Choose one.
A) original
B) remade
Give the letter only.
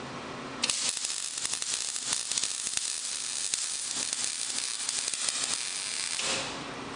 A